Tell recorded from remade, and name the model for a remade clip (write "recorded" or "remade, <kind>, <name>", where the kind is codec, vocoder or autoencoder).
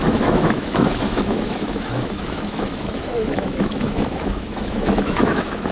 remade, autoencoder, DAC-VAE